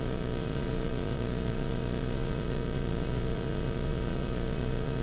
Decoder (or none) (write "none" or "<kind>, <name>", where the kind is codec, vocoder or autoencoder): vocoder, Vocos